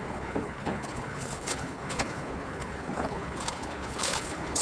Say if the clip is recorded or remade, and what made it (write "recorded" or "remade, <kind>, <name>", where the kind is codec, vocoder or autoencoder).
remade, codec, HILCodec